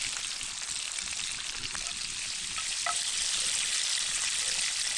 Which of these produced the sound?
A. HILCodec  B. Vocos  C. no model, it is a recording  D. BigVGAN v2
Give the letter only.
C